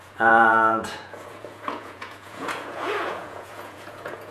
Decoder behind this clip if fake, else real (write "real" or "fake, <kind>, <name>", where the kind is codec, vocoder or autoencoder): fake, vocoder, Vocos